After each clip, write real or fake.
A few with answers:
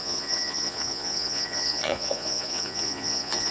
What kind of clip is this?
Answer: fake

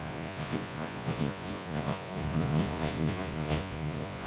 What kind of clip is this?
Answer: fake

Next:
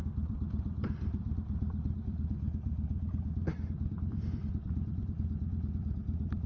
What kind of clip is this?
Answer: fake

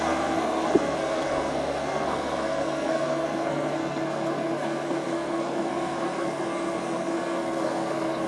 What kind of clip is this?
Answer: fake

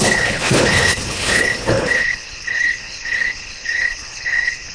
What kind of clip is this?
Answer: fake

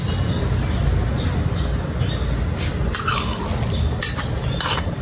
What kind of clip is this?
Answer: real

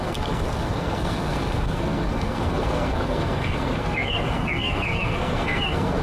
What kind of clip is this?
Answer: fake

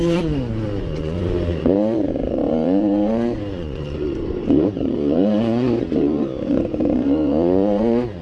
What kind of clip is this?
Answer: fake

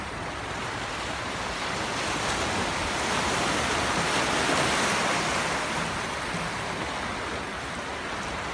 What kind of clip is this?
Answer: real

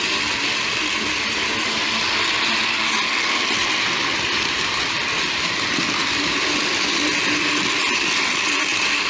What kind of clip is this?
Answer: real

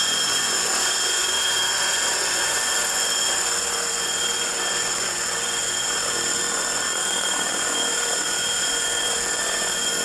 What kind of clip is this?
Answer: fake